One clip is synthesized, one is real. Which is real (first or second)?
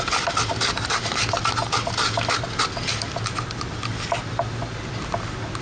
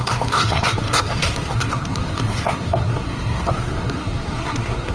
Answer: first